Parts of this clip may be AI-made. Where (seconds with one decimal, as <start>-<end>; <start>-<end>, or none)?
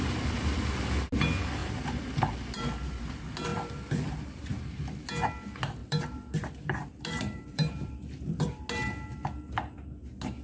1.6-3.1; 3.5-4.6; 5.8-8.6